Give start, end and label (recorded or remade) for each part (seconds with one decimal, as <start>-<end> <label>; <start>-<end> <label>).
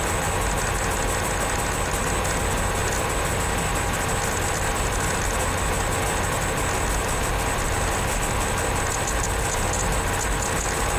0.0-11.0 recorded